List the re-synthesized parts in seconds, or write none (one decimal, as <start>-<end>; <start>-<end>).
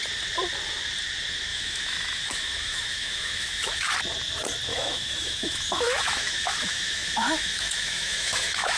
1.5-3.9; 4.7-8.8